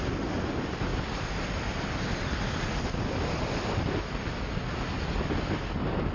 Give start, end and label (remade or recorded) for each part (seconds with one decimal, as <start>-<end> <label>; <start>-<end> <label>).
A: 0.0-6.1 recorded